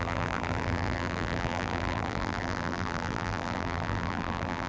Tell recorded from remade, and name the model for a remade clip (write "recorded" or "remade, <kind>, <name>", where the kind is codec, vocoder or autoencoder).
remade, vocoder, BigVGAN v2